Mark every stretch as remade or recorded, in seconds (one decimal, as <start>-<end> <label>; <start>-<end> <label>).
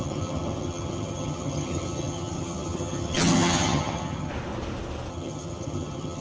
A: 0.0-4.3 remade; 4.3-5.1 recorded; 5.1-6.2 remade